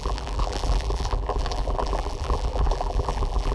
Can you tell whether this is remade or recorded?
remade